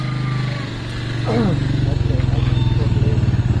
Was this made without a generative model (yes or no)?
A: yes